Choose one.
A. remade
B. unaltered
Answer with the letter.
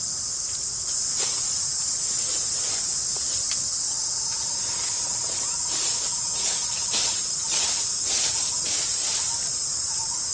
B